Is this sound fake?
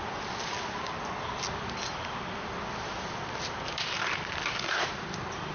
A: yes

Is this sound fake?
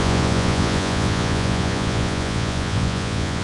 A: yes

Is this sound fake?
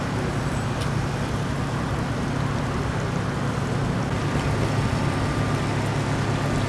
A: no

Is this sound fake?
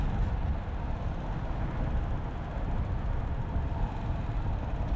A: no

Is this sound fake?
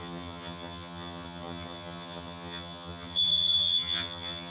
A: yes